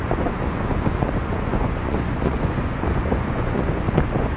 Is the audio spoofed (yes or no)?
yes